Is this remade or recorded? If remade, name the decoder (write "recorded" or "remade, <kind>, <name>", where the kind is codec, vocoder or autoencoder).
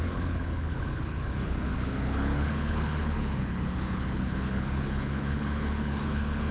remade, codec, HILCodec